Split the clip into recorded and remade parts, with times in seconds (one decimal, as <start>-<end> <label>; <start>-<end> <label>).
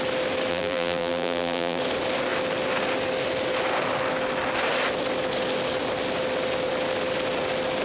0.0-0.5 recorded; 0.5-1.8 remade; 1.8-7.8 recorded